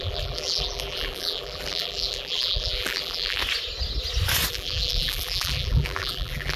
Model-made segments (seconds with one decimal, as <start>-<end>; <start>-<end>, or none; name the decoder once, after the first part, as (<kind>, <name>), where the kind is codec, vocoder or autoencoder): 0.0-3.4 (vocoder, BigVGAN v2); 4.5-6.6